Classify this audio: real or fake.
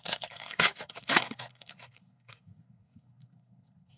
fake